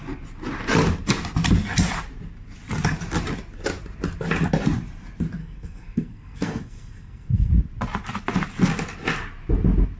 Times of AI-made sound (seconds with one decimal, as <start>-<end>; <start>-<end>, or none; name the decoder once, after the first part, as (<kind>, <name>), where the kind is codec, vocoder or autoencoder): 5.4-7.5 (codec, SNAC)